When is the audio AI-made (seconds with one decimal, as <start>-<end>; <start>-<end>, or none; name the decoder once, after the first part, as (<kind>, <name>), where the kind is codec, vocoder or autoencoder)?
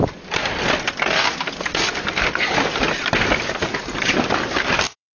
0.0-0.4 (vocoder, BigVGAN v2); 1.5-2.5; 3.7-5.2